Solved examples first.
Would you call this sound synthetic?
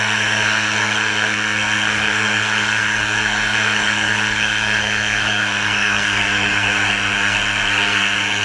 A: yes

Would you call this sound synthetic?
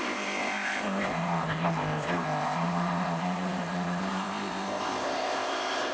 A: yes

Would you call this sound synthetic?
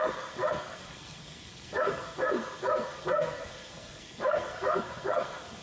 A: yes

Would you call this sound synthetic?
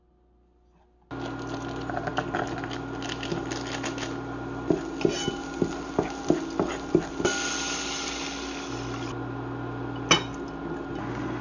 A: no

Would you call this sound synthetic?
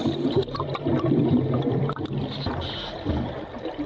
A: no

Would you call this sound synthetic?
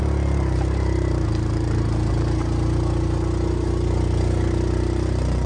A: no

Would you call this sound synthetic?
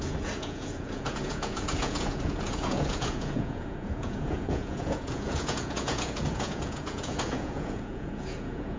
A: yes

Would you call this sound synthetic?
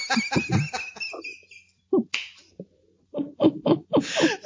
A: no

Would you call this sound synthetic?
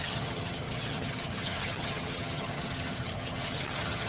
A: yes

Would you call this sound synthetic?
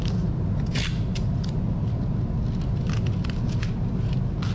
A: no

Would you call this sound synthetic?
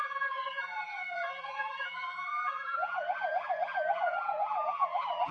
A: yes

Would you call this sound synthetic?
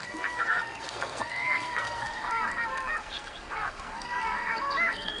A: yes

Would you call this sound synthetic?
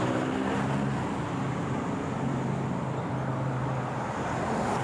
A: no